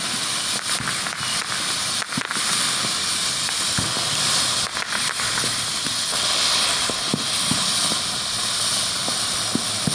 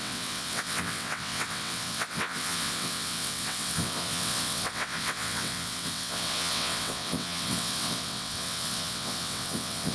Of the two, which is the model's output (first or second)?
second